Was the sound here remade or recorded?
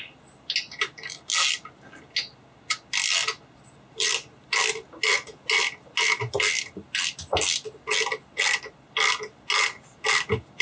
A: recorded